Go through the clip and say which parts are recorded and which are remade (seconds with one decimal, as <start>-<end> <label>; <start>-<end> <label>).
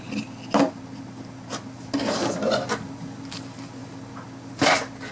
0.0-5.1 recorded